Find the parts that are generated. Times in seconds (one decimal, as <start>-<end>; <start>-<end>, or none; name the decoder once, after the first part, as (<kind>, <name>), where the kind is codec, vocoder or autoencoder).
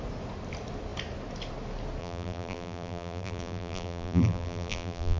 2.0-5.2 (vocoder, BigVGAN v2)